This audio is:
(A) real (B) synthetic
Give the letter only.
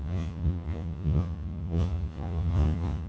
B